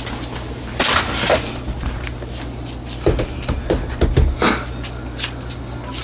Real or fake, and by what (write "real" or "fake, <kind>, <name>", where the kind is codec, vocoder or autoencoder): real